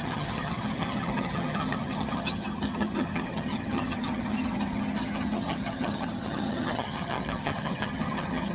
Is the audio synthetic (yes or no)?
yes